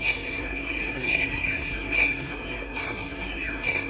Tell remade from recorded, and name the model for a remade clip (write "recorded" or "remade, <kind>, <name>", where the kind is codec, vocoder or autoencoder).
remade, codec, SNAC